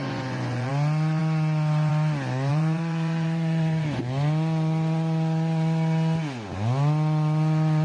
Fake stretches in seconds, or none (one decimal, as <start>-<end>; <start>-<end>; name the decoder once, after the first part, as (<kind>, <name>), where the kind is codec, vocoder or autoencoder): 0.0-0.7 (vocoder, Vocos); 2.5-4.0